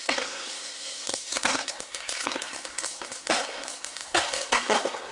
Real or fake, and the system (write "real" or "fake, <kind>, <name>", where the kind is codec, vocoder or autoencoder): fake, codec, SNAC